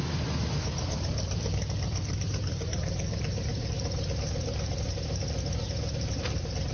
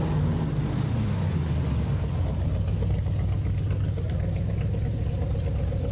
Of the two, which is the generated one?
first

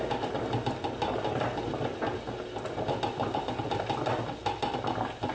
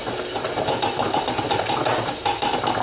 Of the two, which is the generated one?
second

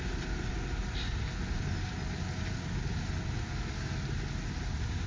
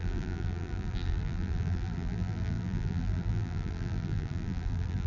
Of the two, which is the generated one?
second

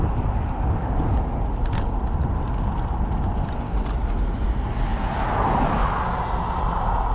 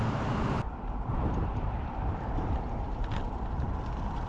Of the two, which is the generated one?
second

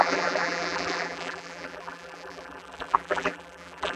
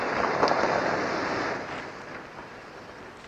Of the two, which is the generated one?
first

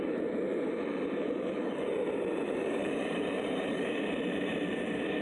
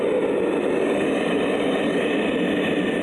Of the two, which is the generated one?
first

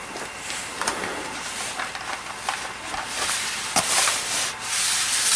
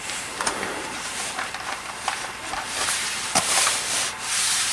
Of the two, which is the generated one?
second